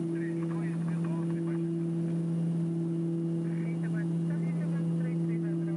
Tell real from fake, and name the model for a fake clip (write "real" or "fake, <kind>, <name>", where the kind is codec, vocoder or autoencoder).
real